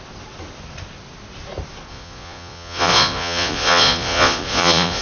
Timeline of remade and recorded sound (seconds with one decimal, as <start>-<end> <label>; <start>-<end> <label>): 0.0-1.9 recorded; 1.9-5.0 remade

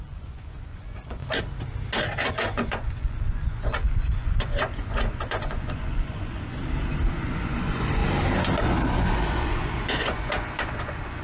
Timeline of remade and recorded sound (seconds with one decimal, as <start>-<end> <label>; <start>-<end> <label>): 0.0-1.2 remade; 1.2-2.3 recorded; 2.3-6.6 remade; 6.6-7.1 recorded; 7.1-8.0 remade; 8.0-8.6 recorded; 8.6-11.2 remade

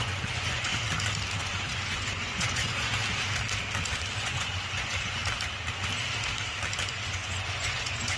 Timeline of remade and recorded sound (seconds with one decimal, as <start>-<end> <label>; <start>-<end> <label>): 0.0-0.7 remade; 0.7-1.4 recorded; 1.4-2.9 remade; 2.9-4.2 recorded; 4.2-5.2 remade; 5.2-6.9 recorded; 6.9-8.2 remade

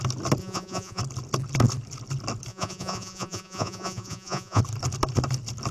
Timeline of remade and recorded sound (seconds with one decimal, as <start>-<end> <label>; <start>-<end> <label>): 0.0-0.4 recorded; 0.4-1.0 remade; 1.0-2.5 recorded; 2.5-4.6 remade; 4.6-5.7 recorded